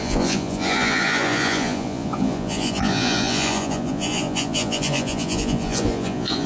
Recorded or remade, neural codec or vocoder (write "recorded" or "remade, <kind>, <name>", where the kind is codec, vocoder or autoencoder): remade, vocoder, Vocos